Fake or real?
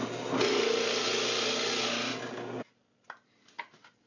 real